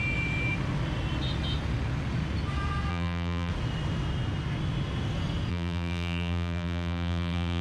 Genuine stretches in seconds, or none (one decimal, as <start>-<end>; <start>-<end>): 0.0-2.9; 3.5-5.5